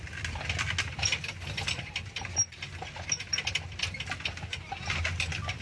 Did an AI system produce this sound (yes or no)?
no